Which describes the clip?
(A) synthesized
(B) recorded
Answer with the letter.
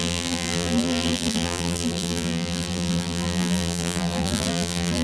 A